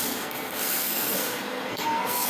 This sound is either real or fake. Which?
fake